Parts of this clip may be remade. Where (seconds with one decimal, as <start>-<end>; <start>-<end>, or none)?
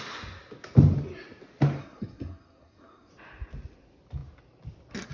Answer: 1.8-3.1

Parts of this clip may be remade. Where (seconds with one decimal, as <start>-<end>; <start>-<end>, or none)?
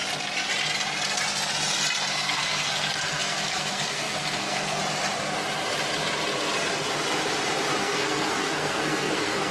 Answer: 2.1-4.8; 7.8-9.5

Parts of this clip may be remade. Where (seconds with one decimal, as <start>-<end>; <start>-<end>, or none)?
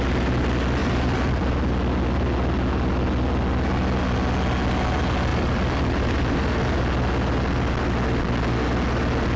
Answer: 0.8-1.5; 5.3-6.8